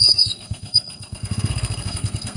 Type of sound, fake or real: fake